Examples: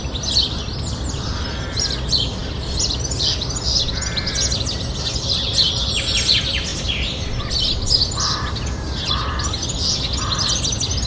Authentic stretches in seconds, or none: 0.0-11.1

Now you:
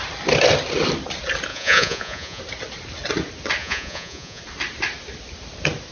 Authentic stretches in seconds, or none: 0.0-1.5; 2.4-3.6; 4.4-5.9